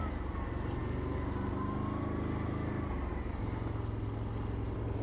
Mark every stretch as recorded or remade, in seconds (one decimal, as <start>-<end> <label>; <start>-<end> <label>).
0.0-5.0 recorded